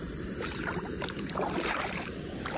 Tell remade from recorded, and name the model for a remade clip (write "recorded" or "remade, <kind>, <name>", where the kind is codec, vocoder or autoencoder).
remade, vocoder, BigVGAN v2